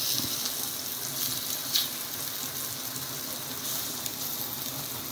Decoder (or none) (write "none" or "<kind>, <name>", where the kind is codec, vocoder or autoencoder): none